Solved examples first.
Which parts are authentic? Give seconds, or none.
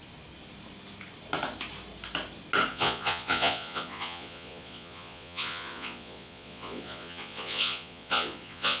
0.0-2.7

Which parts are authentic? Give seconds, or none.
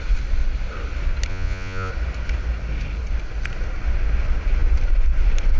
0.0-1.3; 1.9-5.6